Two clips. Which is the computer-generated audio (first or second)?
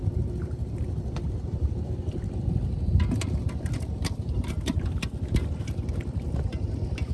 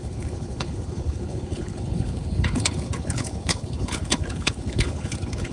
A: second